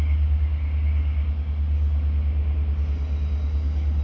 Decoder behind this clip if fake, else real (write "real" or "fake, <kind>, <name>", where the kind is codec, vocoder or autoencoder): real